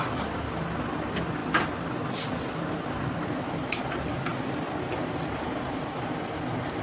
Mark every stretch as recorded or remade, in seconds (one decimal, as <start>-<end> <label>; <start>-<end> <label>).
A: 0.0-6.8 recorded